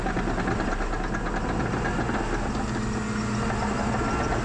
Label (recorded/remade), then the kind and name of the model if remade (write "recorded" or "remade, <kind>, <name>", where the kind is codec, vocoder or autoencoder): recorded